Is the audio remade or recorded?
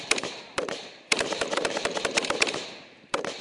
remade